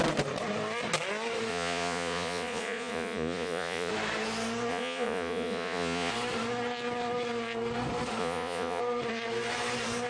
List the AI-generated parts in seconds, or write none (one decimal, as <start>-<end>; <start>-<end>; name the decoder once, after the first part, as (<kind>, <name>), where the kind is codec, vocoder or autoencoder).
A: 1.5-3.9 (vocoder, Vocos); 4.7-6.1; 8.2-8.8